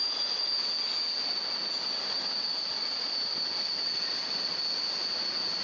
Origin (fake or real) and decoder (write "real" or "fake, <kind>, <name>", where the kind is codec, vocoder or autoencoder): real